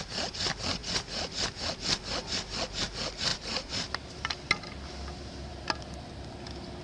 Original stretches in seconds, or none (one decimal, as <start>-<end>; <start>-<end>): 0.0-3.3; 3.9-6.8